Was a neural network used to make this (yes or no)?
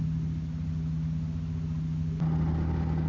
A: no